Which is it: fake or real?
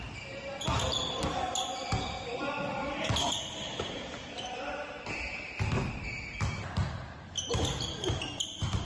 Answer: real